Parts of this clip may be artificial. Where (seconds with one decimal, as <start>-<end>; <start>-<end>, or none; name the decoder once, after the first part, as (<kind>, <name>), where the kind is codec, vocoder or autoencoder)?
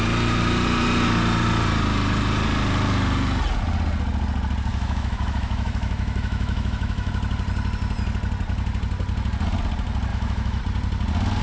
4.7-7.1 (autoencoder, DAC-VAE); 10.1-10.6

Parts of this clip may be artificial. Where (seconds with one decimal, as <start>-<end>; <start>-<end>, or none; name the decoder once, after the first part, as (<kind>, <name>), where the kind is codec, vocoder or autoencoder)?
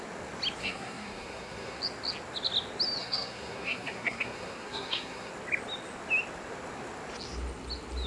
0.6-1.8 (codec, SNAC); 3.0-5.3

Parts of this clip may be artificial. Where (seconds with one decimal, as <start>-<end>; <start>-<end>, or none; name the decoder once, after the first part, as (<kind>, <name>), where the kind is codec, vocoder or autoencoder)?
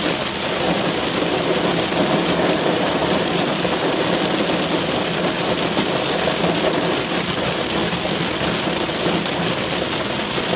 1.9-3.0 (vocoder, BigVGAN v2); 7.8-10.1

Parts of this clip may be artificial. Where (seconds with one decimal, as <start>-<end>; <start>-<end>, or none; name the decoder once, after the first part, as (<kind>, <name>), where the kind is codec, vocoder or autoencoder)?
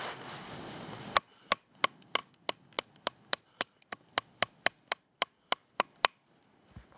none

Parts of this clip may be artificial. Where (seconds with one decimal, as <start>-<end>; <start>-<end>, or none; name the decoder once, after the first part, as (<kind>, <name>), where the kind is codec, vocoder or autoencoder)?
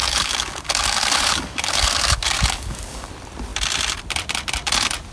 0.0-3.1 (codec, DAC)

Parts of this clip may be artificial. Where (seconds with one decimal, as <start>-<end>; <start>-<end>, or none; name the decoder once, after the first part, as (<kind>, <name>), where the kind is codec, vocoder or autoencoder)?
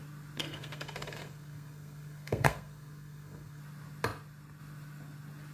0.4-3.6 (codec, SNAC)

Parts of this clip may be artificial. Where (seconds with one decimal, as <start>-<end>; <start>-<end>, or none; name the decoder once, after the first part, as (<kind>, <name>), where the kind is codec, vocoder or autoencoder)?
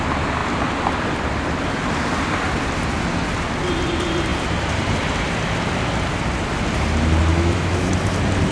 7.3-7.9 (autoencoder, DAC-VAE)